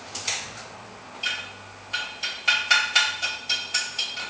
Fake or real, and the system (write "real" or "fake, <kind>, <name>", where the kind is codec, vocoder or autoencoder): real